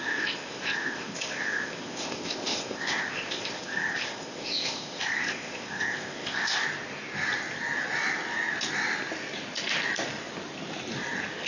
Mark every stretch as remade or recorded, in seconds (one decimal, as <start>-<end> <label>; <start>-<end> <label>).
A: 0.0-6.6 remade; 6.6-11.5 recorded